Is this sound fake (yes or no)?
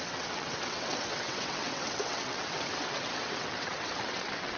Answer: yes